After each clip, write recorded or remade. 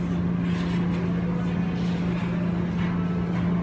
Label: recorded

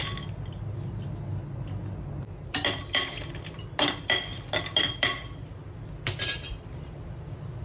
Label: recorded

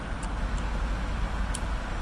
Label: recorded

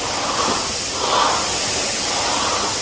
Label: remade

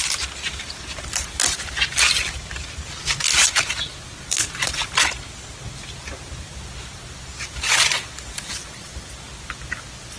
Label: recorded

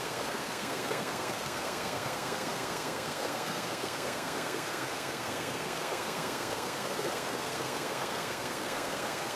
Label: remade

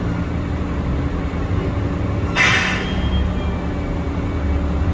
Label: recorded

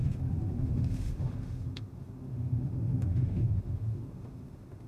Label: remade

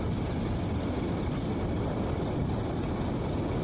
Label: recorded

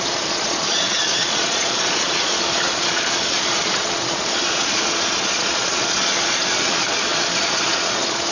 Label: remade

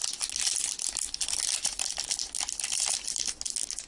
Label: recorded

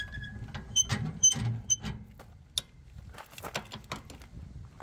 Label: recorded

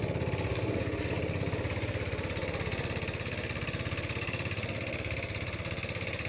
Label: recorded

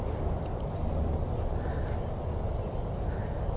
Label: recorded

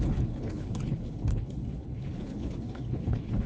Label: remade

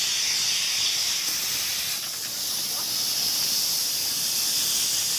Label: recorded